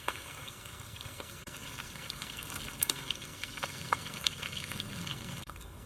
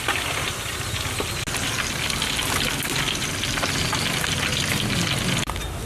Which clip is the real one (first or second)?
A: second